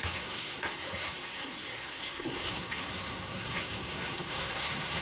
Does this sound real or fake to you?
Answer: fake